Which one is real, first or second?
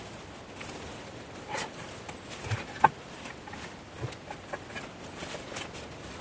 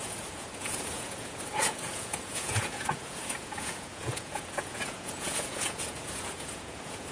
first